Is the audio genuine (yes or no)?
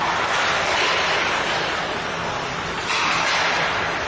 yes